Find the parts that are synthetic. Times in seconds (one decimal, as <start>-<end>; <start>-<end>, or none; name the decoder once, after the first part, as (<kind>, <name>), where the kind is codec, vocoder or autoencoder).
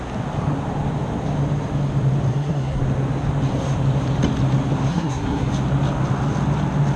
2.3-2.8 (codec, SNAC); 4.9-5.5